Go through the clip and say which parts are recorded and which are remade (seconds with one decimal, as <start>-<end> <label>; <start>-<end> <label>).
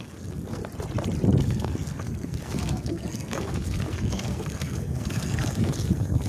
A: 0.0-0.6 remade; 0.6-1.4 recorded; 1.4-6.3 remade